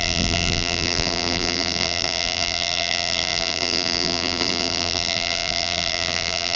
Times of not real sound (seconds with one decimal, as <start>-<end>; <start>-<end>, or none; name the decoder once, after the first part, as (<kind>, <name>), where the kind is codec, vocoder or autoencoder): 0.0-6.6 (vocoder, BigVGAN v2)